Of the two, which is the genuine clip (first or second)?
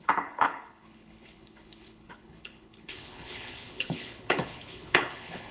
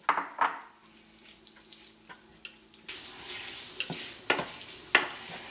second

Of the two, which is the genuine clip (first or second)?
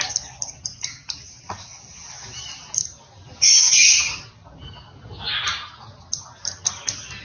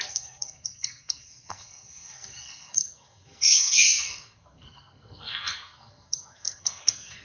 first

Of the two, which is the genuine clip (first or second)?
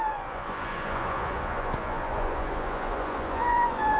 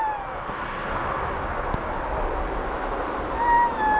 second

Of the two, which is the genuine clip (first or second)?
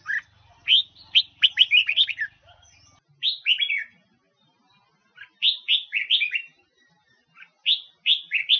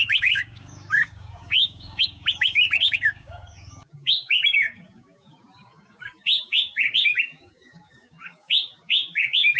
first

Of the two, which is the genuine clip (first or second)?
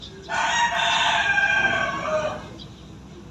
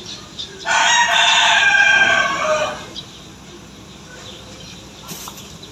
first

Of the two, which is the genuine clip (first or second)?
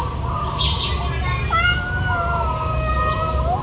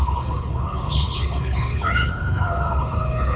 first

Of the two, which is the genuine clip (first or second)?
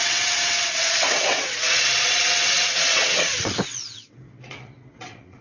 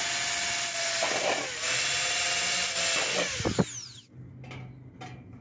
second